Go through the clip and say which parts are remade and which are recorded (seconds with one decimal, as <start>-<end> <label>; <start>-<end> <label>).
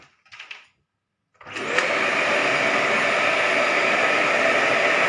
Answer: 0.0-5.1 recorded